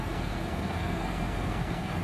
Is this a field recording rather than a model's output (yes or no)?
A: no